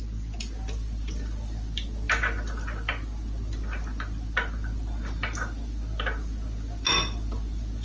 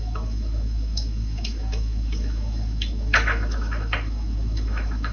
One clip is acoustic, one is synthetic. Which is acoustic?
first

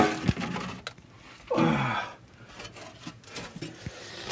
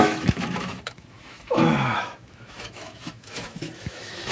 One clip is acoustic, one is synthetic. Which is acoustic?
first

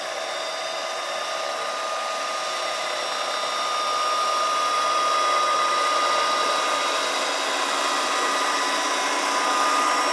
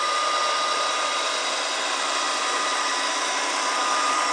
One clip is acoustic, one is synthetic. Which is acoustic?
first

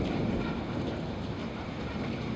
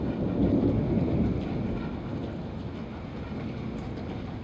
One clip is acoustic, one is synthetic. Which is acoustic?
second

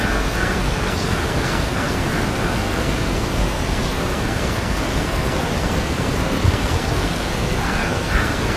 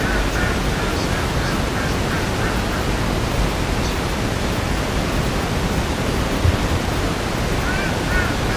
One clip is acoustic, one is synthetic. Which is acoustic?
second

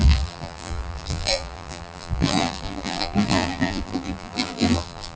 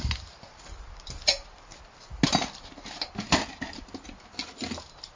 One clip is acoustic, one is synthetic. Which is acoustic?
second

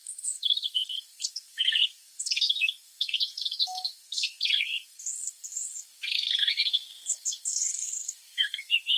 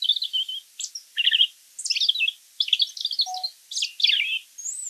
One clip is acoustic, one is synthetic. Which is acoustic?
second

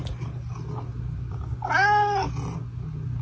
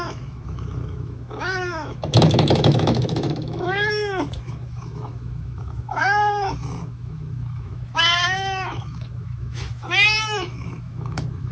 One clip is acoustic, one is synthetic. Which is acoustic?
first